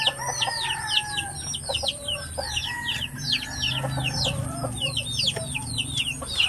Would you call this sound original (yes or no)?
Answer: yes